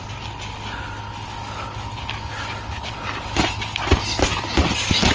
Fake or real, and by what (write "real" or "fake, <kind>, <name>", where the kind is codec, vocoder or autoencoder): real